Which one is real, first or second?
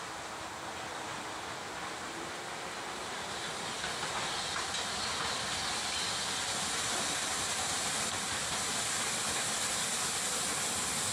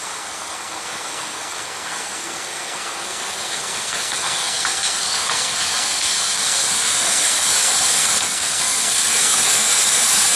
first